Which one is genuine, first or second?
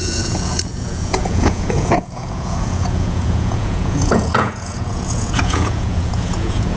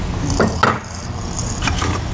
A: second